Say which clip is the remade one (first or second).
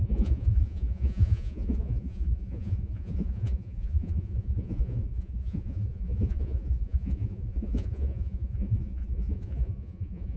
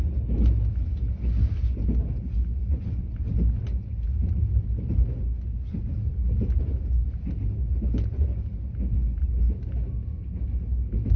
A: first